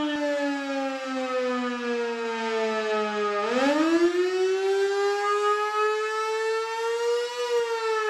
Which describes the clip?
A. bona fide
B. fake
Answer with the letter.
A